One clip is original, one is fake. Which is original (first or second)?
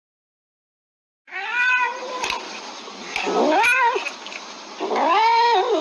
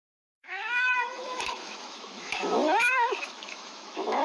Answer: first